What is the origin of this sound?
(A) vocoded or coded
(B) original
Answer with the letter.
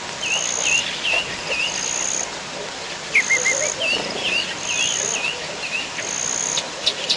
B